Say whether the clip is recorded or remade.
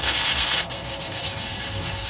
remade